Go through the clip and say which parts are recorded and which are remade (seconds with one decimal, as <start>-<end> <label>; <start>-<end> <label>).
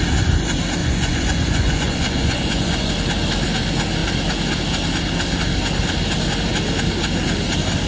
0.0-0.8 recorded; 0.8-2.9 remade; 2.9-7.9 recorded